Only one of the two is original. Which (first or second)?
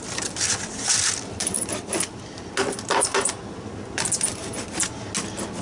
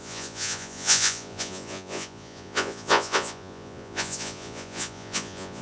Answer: first